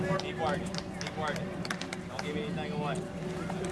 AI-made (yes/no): no